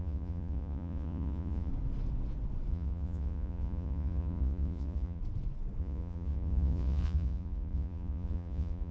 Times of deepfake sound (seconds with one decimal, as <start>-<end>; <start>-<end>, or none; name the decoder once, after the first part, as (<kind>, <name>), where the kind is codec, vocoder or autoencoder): 0.0-1.7 (vocoder, Vocos); 2.7-5.2; 5.8-8.9